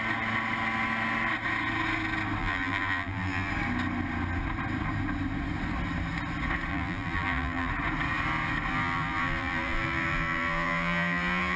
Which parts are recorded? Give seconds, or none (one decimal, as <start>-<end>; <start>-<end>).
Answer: 0.0-2.4; 3.5-6.7; 7.7-8.7